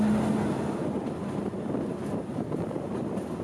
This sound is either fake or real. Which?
real